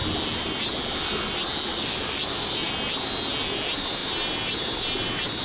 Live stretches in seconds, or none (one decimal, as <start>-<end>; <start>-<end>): 0.0-1.7; 2.7-5.4